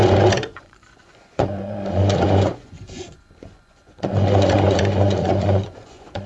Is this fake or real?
fake